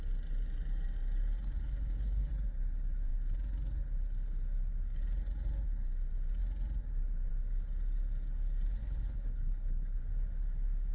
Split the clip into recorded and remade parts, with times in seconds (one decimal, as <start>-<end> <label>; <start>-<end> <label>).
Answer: 0.0-1.6 recorded; 1.6-2.3 remade; 2.3-8.8 recorded; 8.8-10.0 remade; 10.0-10.9 recorded